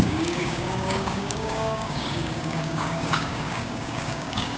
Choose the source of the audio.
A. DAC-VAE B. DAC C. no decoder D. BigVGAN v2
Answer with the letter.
B